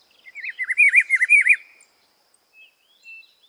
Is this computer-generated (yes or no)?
no